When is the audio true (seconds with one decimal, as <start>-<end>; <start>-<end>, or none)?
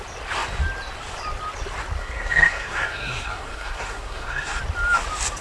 0.0-2.0; 4.6-5.4